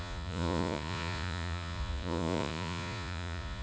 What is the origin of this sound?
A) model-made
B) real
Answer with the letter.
A